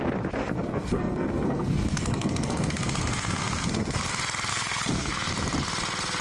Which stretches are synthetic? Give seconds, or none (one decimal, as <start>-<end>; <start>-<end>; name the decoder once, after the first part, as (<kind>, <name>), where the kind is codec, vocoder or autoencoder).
0.4-4.1 (codec, SNAC); 4.5-5.1